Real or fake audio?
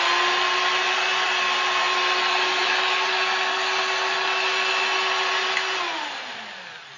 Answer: real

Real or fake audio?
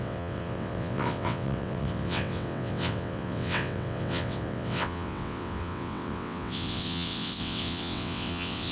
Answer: fake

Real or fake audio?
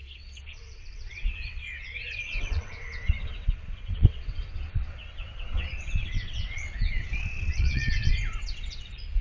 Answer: fake